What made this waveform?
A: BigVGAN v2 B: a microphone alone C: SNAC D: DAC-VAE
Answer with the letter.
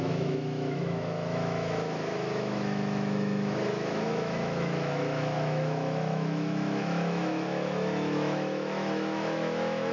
D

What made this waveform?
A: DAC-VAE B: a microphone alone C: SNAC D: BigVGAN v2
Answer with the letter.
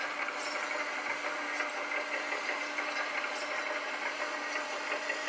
B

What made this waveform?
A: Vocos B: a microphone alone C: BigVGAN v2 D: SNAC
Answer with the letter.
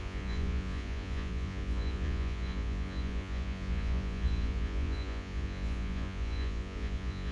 A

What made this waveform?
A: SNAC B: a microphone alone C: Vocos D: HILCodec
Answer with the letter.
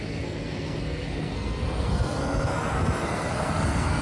A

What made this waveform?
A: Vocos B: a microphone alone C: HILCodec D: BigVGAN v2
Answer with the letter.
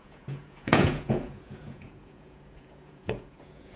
A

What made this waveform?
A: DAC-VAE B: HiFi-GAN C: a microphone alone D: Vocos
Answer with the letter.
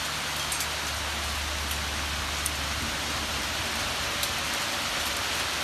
C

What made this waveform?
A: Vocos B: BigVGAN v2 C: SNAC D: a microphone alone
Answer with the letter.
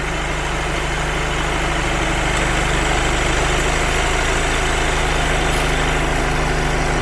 D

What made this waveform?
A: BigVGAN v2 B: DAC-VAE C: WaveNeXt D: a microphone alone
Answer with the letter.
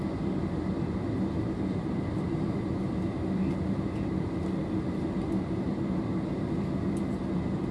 A